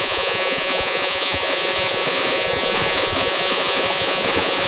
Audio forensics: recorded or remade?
remade